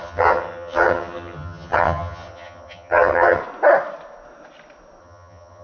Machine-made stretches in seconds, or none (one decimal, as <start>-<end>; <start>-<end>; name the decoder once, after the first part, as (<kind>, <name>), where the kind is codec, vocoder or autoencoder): 0.0-3.4 (vocoder, HiFi-GAN); 5.0-5.6